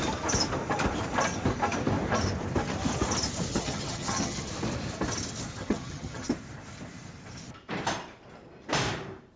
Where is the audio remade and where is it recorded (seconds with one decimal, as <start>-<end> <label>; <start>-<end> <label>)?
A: 0.0-3.5 recorded; 3.5-4.5 remade; 4.5-5.6 recorded; 5.6-6.3 remade; 6.3-9.4 recorded

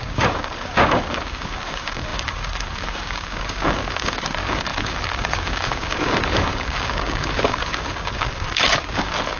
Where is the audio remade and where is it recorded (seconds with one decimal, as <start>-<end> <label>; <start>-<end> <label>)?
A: 0.0-9.4 remade

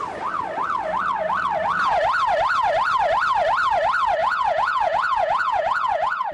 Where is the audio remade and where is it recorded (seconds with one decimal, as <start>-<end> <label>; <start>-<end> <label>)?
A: 0.0-4.2 recorded; 4.2-6.3 remade

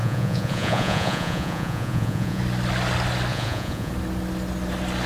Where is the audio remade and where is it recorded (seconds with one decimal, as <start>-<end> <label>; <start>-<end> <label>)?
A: 0.0-2.4 remade; 2.4-3.3 recorded; 3.3-3.9 remade; 3.9-5.1 recorded